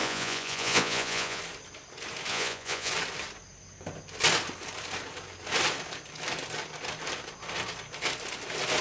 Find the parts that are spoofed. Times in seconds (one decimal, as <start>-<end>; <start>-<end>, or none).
0.0-1.4; 2.3-2.9